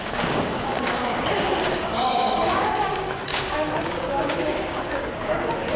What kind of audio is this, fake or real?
fake